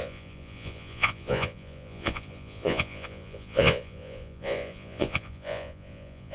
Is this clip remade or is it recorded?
remade